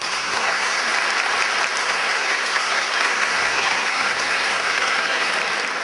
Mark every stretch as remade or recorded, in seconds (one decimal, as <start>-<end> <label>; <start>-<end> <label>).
0.0-0.8 remade; 0.8-1.8 recorded; 1.8-5.3 remade; 5.3-5.8 recorded